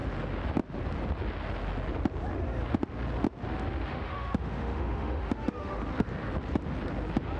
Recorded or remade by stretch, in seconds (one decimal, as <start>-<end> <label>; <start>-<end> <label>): 0.0-3.9 recorded; 3.9-5.8 remade; 5.8-7.4 recorded